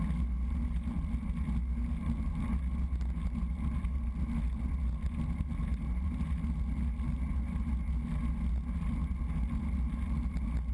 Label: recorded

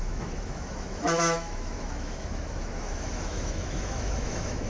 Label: remade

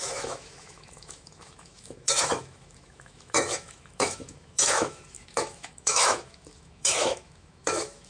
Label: remade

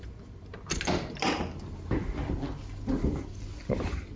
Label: recorded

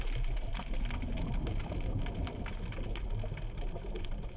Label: recorded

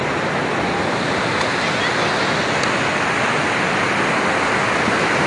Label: recorded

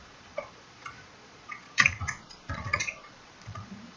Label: remade